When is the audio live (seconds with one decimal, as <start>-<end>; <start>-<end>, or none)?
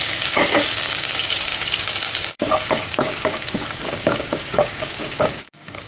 none